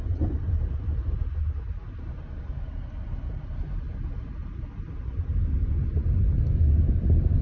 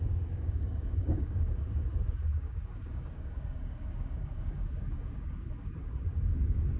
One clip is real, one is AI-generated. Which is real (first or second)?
first